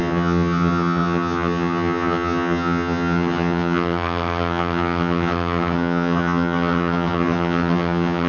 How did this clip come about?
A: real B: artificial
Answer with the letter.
B